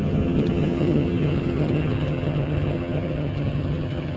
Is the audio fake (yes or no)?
yes